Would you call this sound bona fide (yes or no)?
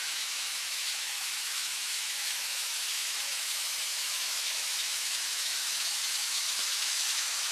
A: no